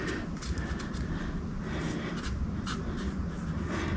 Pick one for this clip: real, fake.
real